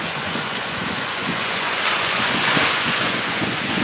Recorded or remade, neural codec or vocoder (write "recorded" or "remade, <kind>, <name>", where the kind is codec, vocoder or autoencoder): remade, vocoder, Vocos